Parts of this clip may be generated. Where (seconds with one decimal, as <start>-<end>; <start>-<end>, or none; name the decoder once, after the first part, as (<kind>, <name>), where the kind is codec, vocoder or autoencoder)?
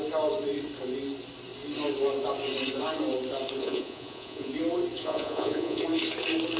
3.6-4.5 (vocoder, Vocos); 5.0-5.8